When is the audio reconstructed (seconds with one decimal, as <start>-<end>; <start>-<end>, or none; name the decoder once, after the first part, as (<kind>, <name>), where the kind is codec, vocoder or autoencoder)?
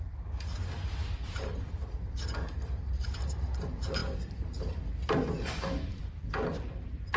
4.0-4.7 (vocoder, BigVGAN v2); 5.9-6.5